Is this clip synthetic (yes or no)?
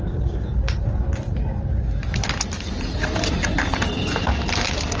no